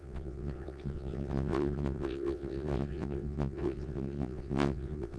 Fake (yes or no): yes